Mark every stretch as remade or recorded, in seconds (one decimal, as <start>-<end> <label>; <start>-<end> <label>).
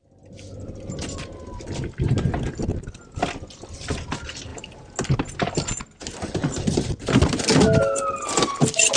0.0-9.0 recorded